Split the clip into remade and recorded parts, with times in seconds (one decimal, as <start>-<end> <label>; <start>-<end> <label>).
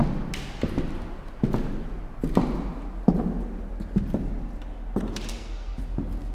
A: 0.0-5.3 recorded; 5.3-5.8 remade; 5.8-6.3 recorded